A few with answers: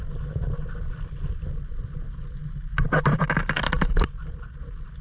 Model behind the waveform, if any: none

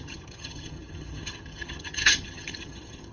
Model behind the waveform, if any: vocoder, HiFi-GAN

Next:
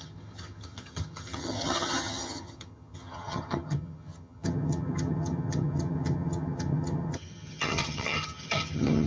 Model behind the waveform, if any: vocoder, HiFi-GAN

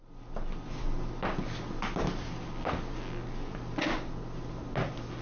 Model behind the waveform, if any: none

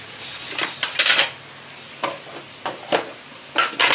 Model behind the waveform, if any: none